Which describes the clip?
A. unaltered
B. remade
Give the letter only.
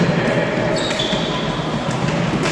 A